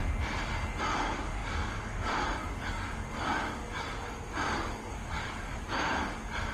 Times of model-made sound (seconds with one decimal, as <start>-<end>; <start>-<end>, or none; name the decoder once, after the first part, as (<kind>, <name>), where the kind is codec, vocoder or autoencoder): 0.8-6.5 (codec, DAC)